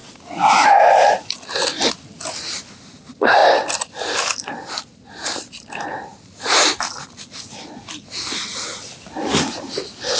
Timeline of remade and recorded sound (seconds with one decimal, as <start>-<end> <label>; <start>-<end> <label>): 0.0-10.2 recorded